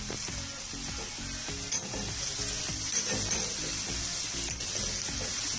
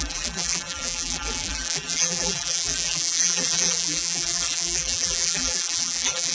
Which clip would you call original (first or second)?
first